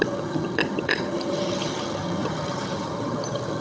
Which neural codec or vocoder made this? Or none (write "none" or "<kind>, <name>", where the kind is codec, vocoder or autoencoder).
vocoder, HiFi-GAN